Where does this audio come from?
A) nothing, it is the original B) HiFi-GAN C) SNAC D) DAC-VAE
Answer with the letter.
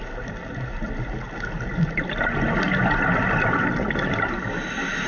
A